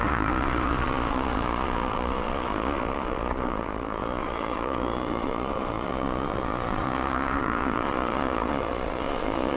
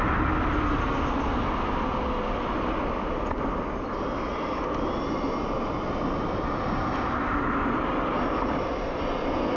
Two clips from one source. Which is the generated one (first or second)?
first